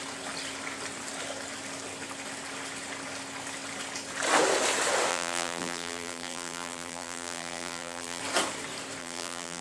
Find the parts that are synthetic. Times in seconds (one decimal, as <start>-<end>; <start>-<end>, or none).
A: 5.1-8.2; 9.0-9.6